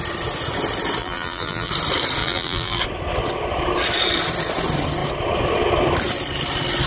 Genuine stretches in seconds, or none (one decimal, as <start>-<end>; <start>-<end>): 0.0-1.0; 1.7-2.2; 2.8-6.9